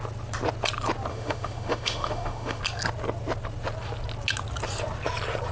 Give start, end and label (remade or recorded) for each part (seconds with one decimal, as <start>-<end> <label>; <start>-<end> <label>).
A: 0.0-1.1 recorded; 1.1-2.6 remade; 2.6-5.5 recorded